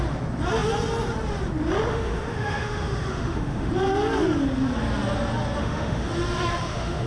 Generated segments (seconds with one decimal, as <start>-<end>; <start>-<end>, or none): 1.9-3.7; 5.6-6.1; 6.5-7.1